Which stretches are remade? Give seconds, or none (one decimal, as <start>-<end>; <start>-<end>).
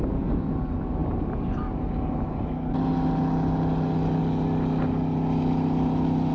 none